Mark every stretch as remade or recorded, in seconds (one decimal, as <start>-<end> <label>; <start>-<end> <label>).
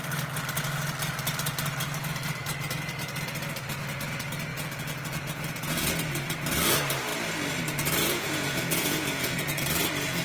0.0-4.5 recorded; 4.5-6.1 remade; 6.1-8.0 recorded; 8.0-9.6 remade; 9.6-10.2 recorded